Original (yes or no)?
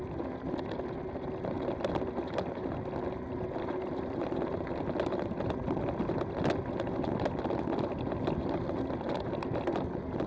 yes